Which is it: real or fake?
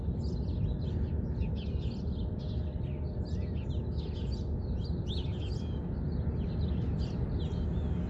real